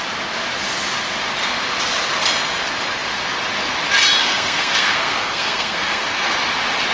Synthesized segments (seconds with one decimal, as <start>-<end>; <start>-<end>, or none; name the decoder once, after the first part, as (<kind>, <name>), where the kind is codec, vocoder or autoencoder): 4.2-6.3 (codec, SNAC)